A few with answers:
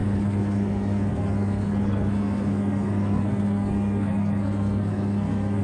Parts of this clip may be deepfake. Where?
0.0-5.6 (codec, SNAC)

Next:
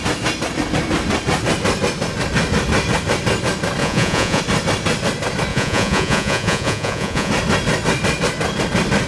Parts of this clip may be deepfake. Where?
3.8-4.4 (vocoder, Vocos); 5.5-7.3